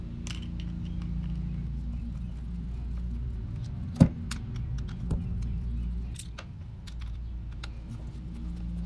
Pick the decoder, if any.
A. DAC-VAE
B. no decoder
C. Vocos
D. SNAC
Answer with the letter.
B